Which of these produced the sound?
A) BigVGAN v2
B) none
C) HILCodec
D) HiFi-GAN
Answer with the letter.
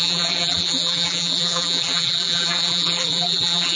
A